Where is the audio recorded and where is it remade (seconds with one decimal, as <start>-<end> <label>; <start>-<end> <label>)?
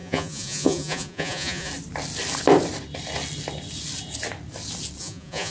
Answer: 0.0-1.7 remade; 1.7-5.0 recorded; 5.0-5.5 remade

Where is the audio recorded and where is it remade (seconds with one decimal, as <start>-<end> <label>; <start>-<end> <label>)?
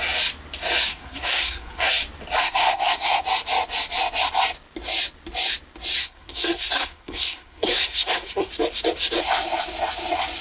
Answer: 0.0-0.9 recorded; 0.9-1.9 remade; 1.9-2.4 recorded; 2.4-3.2 remade; 3.2-6.0 recorded; 6.0-8.5 remade; 8.5-10.4 recorded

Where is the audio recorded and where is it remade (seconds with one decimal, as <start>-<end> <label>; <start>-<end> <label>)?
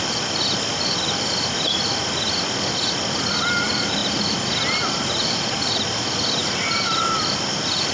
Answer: 0.0-7.9 recorded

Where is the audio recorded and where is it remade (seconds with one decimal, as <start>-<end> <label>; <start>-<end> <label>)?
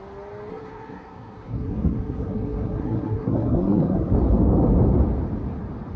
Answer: 0.0-0.5 recorded; 0.5-4.1 remade; 4.1-6.0 recorded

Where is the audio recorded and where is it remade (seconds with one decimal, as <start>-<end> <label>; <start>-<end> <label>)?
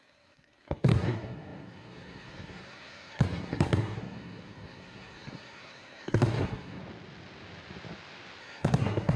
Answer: 0.0-6.8 remade; 6.8-8.4 recorded; 8.4-9.2 remade